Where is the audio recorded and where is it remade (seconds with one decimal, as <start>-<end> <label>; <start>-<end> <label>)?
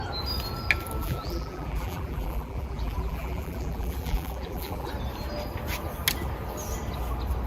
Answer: 0.0-1.0 recorded; 1.0-4.9 remade; 4.9-7.5 recorded